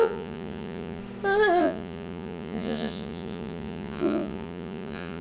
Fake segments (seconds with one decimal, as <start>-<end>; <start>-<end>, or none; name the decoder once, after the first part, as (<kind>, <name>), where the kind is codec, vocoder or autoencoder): 0.0-1.0 (vocoder, Vocos); 1.6-5.2